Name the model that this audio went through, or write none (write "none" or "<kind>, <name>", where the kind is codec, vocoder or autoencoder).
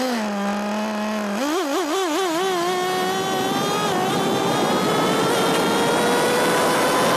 none